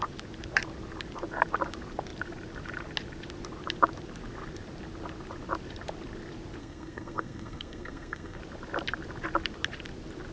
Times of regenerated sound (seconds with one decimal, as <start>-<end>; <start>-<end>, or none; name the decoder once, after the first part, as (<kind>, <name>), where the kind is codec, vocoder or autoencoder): 6.6-8.4 (codec, SNAC)